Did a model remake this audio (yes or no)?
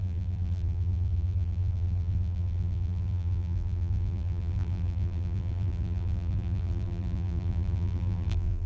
yes